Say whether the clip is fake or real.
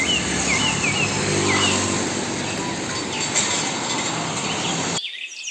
real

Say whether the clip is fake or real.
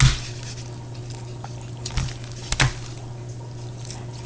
real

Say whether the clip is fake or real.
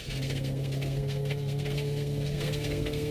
fake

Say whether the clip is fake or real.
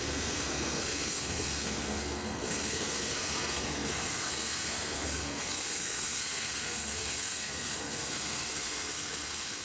fake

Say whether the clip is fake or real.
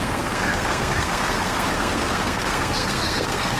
fake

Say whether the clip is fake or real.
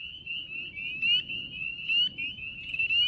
real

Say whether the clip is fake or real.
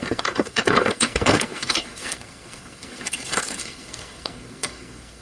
fake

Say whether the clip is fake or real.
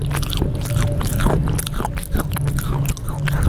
real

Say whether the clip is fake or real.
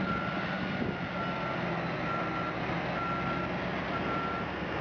real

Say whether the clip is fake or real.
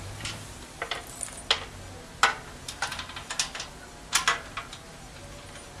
real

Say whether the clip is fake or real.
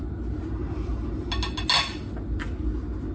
real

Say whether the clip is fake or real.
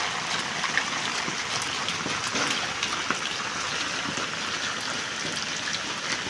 real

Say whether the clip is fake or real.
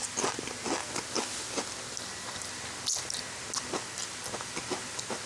real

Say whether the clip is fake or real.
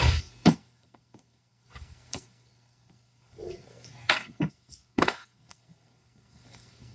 fake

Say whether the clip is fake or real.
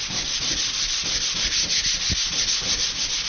real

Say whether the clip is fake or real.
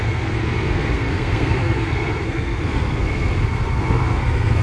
fake